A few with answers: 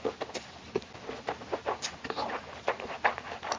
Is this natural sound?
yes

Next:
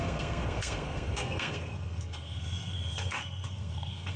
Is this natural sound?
no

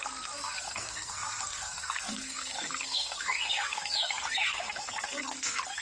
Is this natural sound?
no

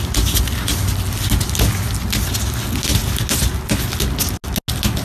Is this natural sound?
yes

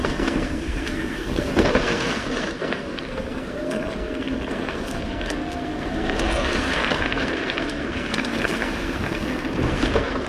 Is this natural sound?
no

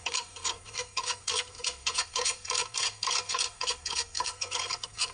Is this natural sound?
no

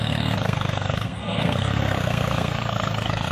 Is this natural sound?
no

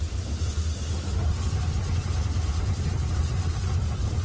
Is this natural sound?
yes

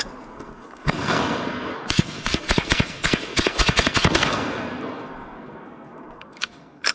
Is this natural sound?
no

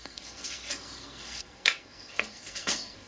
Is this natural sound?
no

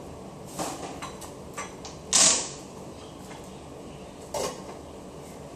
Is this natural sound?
yes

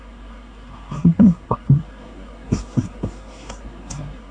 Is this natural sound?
no